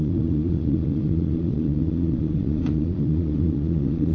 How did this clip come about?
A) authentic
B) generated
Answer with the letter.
B